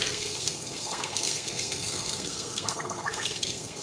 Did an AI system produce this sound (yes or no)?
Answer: yes